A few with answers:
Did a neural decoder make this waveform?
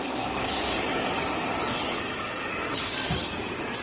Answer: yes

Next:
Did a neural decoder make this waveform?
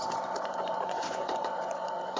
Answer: yes